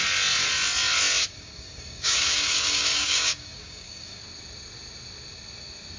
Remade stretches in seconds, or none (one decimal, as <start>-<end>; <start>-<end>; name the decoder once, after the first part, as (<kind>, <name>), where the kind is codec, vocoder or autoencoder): 1.2-4.2 (codec, DAC)